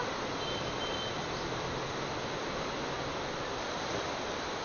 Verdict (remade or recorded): recorded